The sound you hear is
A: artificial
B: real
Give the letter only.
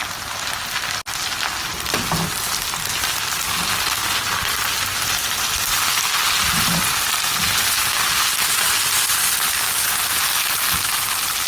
B